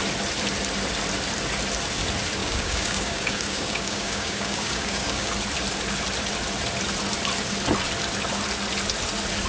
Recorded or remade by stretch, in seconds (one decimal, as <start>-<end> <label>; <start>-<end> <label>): 0.0-2.4 recorded; 2.4-5.3 remade; 5.3-9.5 recorded